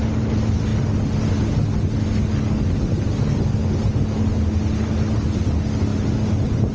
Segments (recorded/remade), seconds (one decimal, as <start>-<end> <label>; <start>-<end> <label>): 0.0-6.7 recorded